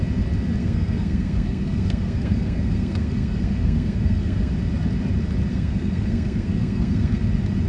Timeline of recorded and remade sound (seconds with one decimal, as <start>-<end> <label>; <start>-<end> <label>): 0.0-0.6 recorded; 0.6-4.5 remade; 4.5-5.5 recorded; 5.5-7.2 remade; 7.2-7.7 recorded